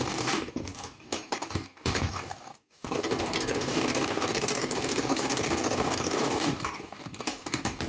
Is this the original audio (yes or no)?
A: no